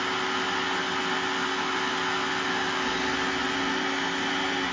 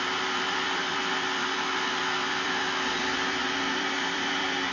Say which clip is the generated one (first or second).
second